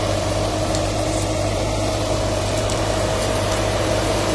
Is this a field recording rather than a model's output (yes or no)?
no